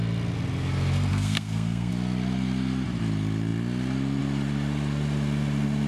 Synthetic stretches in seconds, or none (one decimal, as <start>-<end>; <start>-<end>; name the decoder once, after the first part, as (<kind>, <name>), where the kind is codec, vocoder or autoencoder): 1.1-1.9 (codec, SNAC)